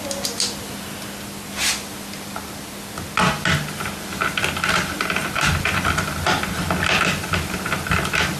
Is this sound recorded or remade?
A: recorded